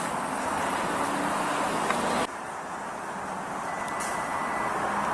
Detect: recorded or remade recorded